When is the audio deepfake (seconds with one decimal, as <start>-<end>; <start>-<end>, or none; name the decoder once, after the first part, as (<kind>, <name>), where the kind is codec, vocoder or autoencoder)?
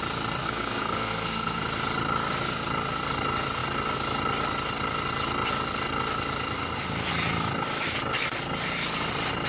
0.4-1.6 (codec, SNAC)